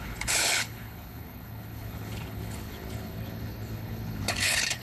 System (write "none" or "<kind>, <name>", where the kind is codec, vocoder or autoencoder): codec, HILCodec